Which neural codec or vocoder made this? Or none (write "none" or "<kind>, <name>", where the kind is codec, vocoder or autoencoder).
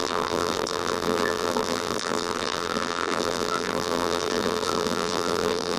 vocoder, BigVGAN v2